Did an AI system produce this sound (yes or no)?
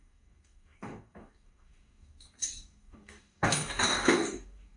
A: yes